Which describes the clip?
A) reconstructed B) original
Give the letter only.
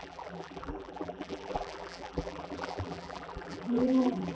A